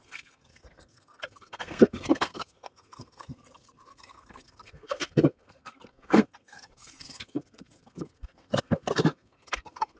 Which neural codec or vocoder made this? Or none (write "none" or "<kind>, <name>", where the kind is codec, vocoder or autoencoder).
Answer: codec, SNAC